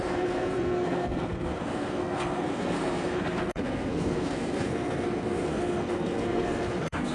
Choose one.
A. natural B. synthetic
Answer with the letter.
B